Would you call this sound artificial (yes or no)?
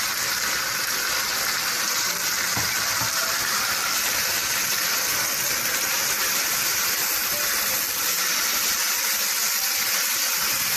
no